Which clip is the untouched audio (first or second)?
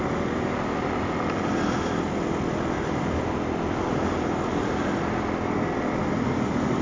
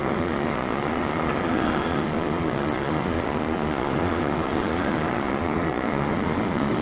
first